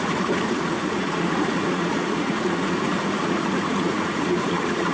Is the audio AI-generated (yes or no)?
yes